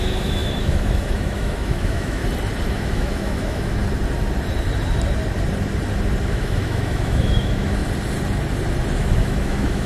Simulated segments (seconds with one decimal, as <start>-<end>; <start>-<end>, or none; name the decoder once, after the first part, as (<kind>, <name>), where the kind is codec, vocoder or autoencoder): 0.0-2.2 (autoencoder, DAC-VAE); 2.7-3.8; 6.2-7.8; 9.0-9.9